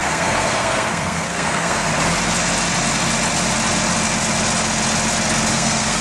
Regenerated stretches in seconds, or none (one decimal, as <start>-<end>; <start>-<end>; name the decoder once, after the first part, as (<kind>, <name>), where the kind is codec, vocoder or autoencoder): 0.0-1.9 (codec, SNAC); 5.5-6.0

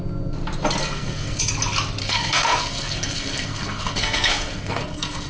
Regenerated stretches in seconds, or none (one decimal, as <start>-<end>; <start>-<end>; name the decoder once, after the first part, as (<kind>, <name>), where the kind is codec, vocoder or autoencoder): 0.8-1.4 (codec, SNAC); 2.0-5.3

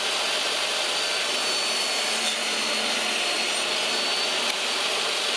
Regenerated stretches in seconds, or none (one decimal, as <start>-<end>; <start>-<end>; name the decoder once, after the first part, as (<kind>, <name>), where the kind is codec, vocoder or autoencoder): none

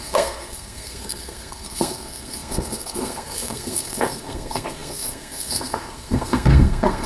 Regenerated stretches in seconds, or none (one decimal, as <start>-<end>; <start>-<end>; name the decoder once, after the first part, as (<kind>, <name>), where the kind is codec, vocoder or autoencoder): 0.0-7.1 (codec, SNAC)

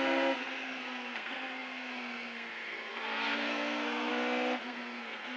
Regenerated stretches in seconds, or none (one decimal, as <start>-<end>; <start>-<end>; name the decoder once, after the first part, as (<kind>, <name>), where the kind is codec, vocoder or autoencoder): 0.0-4.1 (codec, SNAC); 4.6-5.4

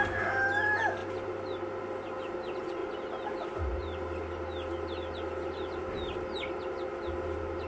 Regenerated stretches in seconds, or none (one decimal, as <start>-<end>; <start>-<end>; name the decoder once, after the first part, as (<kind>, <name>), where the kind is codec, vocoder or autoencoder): none

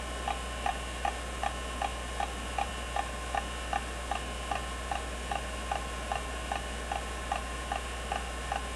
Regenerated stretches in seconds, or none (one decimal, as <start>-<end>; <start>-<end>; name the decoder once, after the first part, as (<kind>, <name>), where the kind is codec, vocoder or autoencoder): none